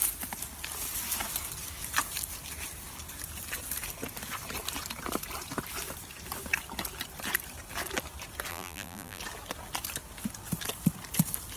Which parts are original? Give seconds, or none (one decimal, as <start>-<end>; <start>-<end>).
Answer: 0.0-8.5; 9.2-11.6